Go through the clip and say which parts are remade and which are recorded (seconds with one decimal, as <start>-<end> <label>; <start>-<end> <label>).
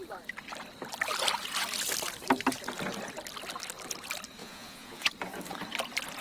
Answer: 0.0-4.4 recorded; 4.4-5.1 remade; 5.1-6.2 recorded